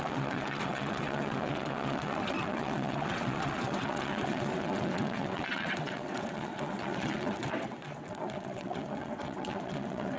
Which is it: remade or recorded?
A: remade